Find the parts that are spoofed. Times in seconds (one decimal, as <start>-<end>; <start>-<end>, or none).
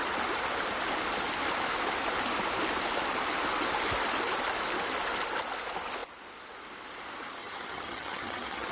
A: 7.4-8.7